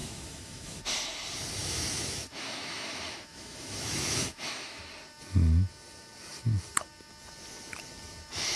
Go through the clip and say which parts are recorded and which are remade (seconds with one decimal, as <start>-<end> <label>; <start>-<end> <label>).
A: 0.0-0.8 remade; 0.8-1.6 recorded; 1.6-4.8 remade; 4.8-8.6 recorded